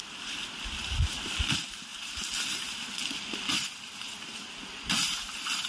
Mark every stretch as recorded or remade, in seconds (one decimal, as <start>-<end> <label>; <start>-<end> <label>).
0.0-5.7 recorded